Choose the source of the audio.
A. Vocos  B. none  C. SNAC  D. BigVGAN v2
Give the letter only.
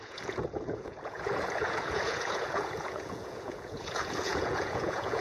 A